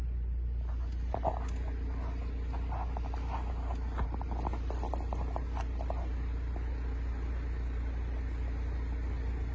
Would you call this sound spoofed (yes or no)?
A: no